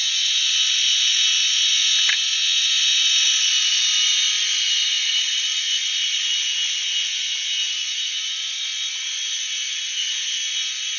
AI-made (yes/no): no